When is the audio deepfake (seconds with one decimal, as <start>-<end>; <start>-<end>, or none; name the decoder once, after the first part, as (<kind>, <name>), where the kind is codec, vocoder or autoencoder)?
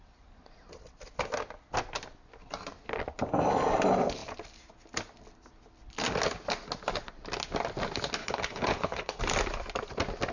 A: 8.2-9.2 (codec, HILCodec)